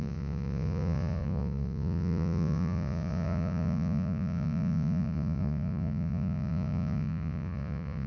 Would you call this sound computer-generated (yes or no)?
yes